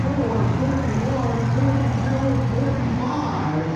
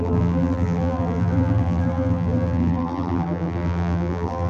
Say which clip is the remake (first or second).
second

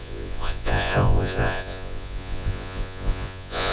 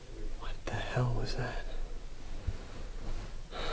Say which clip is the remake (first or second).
first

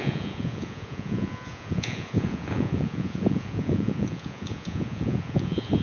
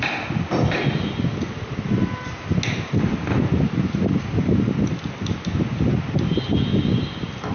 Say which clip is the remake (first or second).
first